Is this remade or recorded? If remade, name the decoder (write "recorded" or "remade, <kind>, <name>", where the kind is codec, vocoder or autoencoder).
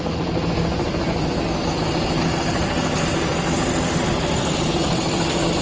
recorded